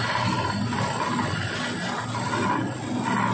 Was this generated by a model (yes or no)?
no